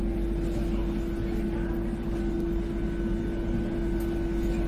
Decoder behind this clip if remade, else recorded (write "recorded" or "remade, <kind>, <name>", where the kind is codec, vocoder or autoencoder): recorded